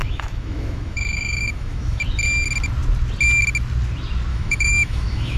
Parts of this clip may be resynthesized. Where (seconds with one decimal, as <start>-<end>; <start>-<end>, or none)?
0.0-2.0; 4.3-5.4